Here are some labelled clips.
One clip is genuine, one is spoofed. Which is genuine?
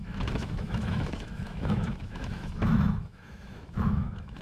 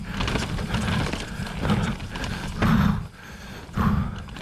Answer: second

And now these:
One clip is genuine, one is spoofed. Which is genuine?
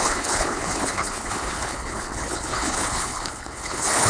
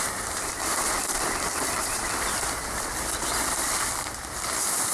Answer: second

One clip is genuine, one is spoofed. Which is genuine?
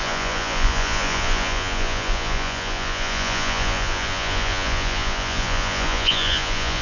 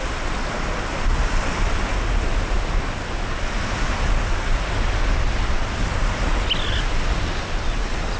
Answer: second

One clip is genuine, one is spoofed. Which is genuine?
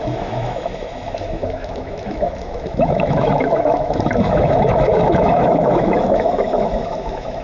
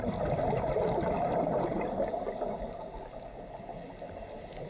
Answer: second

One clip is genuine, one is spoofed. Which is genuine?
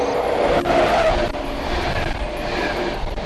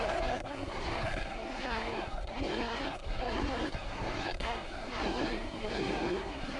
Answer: first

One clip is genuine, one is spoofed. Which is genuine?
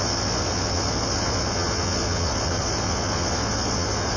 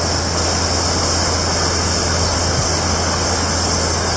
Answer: second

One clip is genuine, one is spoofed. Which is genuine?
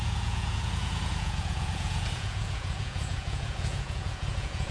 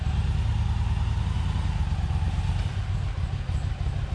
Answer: second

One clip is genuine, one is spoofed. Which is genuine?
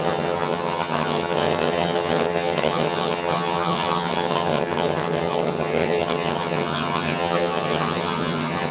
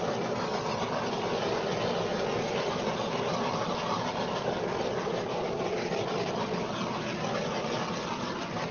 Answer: second